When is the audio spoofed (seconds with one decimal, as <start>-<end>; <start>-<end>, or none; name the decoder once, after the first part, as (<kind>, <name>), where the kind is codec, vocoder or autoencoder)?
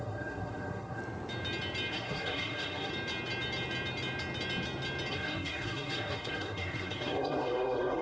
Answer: 0.0-1.0 (codec, SNAC); 1.9-2.9; 5.1-8.0